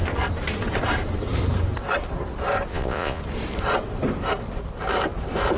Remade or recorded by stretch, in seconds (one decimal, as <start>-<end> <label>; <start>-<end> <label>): 0.0-2.7 recorded; 2.7-3.2 remade; 3.2-5.6 recorded

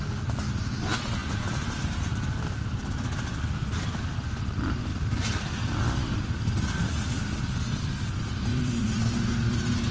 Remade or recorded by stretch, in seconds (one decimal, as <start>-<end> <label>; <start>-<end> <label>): 0.0-1.2 recorded; 1.2-4.0 remade; 4.0-4.9 recorded; 4.9-8.1 remade; 8.1-8.5 recorded; 8.5-9.0 remade; 9.0-9.9 recorded

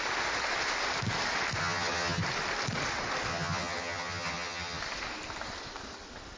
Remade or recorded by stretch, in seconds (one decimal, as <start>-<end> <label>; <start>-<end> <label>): 0.0-1.6 recorded; 1.6-2.2 remade; 2.2-3.3 recorded; 3.3-4.8 remade; 4.8-6.4 recorded

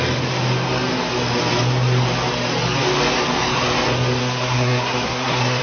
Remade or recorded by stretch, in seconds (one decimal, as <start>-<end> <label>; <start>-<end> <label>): 0.0-4.2 recorded; 4.2-5.6 remade

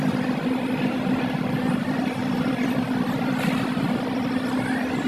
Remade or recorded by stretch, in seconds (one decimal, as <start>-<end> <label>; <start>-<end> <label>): 0.0-0.9 recorded; 0.9-1.8 remade; 1.8-5.1 recorded